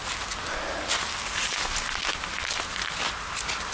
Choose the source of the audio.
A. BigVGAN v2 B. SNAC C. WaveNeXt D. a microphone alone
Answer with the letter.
D